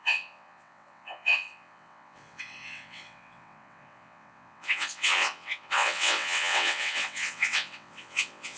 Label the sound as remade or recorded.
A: remade